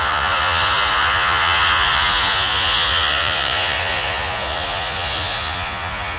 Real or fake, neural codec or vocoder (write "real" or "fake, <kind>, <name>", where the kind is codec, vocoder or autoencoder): fake, vocoder, Vocos